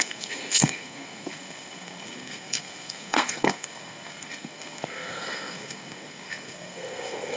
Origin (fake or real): fake